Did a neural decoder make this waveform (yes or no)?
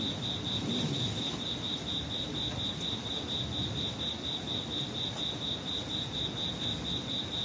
no